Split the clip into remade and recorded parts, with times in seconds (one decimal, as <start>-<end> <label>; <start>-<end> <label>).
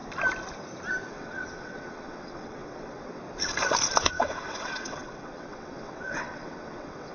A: 0.0-1.1 recorded; 1.1-3.2 remade; 3.2-4.0 recorded; 4.0-7.1 remade